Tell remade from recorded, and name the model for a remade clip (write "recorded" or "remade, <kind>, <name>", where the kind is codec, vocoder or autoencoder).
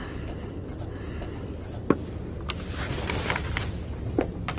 recorded